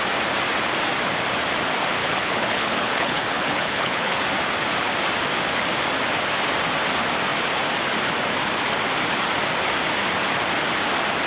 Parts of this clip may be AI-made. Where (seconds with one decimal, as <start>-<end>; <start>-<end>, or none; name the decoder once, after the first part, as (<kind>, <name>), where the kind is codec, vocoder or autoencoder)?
2.0-4.2 (codec, HILCodec)